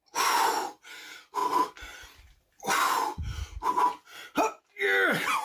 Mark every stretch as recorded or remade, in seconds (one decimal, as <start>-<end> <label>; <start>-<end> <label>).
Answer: 0.0-5.4 recorded